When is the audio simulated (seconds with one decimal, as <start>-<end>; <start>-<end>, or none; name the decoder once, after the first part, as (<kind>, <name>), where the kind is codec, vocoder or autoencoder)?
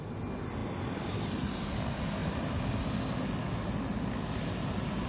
none